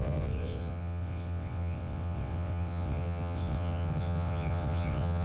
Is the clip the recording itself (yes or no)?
no